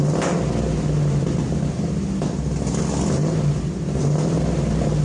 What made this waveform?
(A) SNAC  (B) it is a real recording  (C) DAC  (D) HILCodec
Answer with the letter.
B